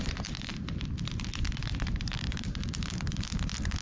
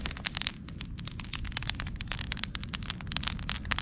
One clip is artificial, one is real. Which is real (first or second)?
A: second